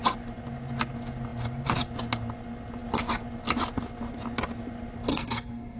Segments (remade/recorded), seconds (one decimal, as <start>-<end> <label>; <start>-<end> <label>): 0.0-5.1 recorded; 5.1-5.8 remade